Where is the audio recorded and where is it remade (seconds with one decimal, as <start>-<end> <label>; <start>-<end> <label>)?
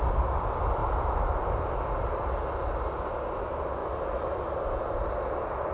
0.0-5.7 recorded